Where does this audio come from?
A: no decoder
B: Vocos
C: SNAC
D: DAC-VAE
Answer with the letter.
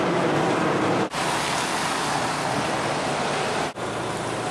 A